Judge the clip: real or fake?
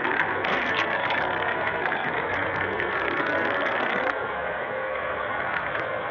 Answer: fake